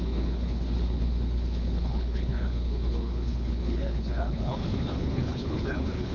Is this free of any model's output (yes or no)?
no